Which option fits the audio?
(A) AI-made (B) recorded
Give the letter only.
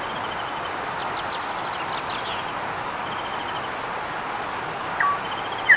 B